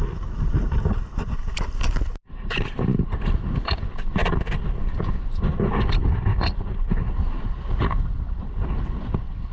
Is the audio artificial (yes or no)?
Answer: no